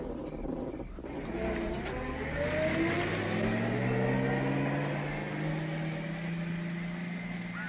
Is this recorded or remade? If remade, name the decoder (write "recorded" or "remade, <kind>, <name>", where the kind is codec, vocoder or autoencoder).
recorded